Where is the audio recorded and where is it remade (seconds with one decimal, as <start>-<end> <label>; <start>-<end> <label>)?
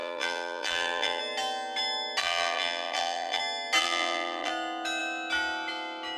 0.0-1.2 remade; 1.2-2.2 recorded; 2.2-3.4 remade; 3.4-3.8 recorded; 3.8-4.5 remade; 4.5-6.2 recorded